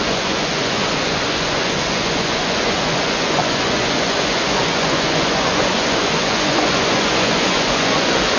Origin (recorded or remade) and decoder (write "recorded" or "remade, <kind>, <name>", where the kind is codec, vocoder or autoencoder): remade, vocoder, Vocos